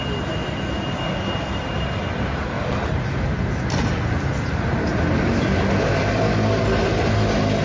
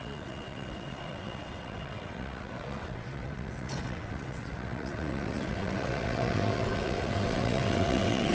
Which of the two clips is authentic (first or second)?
first